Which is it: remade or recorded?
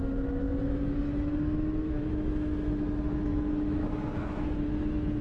remade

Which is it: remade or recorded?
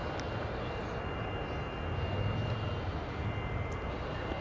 recorded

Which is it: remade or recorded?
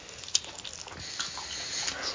recorded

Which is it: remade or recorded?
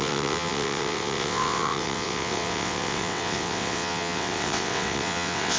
remade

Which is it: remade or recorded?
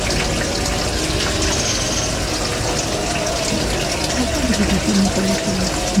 recorded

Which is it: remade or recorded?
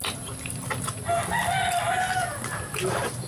recorded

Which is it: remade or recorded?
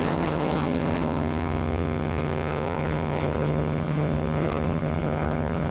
remade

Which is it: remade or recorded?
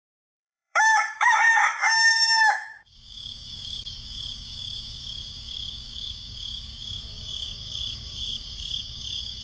remade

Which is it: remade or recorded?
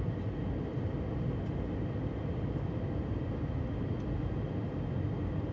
recorded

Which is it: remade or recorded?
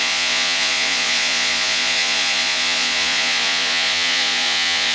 remade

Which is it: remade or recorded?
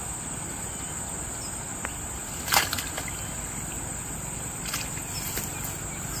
recorded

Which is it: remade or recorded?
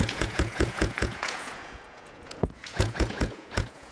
remade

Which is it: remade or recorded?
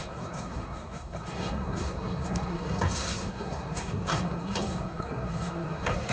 remade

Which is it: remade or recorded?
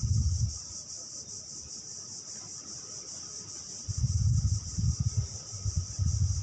recorded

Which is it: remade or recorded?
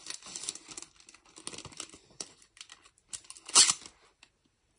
recorded